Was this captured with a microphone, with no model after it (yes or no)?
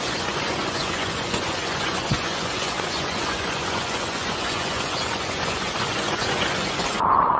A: no